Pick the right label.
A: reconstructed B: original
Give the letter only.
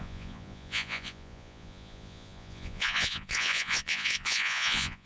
A